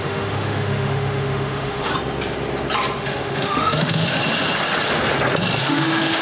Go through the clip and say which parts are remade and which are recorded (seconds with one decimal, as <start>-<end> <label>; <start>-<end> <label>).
0.0-1.9 remade; 1.9-3.0 recorded; 3.0-4.2 remade; 4.2-5.6 recorded; 5.6-6.2 remade